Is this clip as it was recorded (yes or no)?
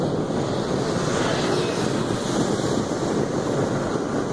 yes